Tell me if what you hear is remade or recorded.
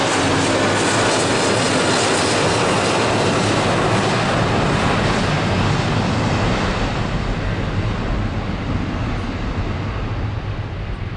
recorded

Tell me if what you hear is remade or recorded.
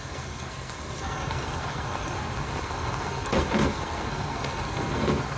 remade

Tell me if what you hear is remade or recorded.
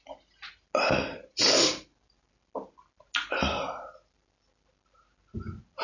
recorded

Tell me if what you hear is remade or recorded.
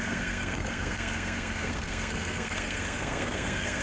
remade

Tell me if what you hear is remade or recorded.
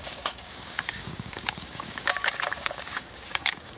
remade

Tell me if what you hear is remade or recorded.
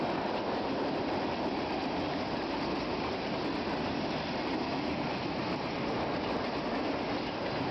recorded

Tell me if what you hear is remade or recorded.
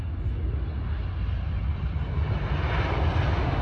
recorded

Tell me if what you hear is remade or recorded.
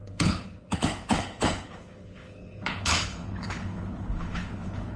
remade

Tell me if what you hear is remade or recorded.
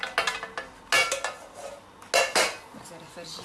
recorded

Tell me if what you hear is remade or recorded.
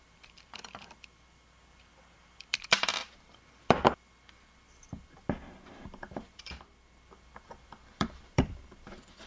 remade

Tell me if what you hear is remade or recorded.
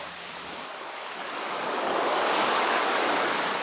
remade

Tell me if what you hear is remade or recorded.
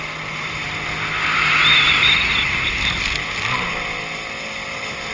recorded